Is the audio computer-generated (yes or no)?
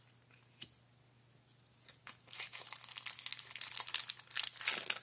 no